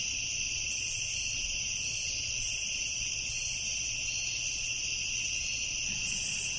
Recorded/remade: recorded